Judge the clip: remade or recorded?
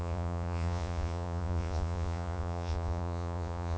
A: remade